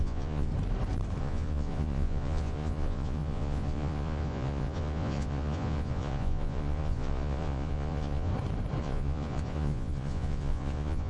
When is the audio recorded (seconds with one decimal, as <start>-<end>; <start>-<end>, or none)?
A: 0.5-1.2; 8.3-8.8